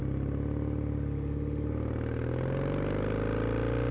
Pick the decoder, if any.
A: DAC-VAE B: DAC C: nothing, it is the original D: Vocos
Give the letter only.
C